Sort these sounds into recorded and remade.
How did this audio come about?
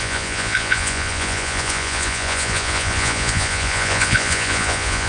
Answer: remade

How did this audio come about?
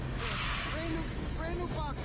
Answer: recorded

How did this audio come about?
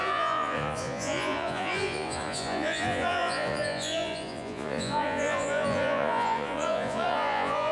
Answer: remade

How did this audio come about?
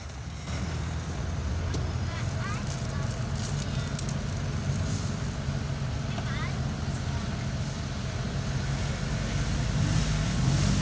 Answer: recorded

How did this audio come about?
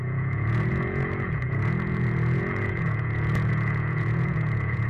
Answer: remade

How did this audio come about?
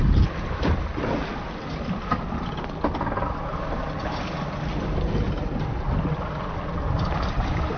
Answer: recorded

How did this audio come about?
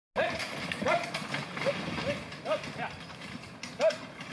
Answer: recorded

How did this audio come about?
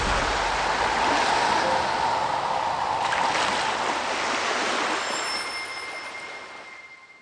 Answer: recorded